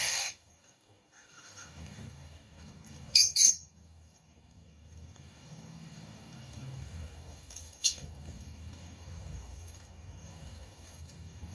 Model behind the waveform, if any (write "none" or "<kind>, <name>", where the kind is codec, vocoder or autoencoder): codec, DAC